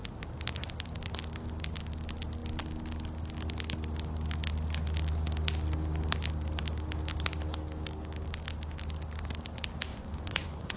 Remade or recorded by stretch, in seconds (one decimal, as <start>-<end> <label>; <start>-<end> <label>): 0.0-9.9 recorded; 9.9-10.8 remade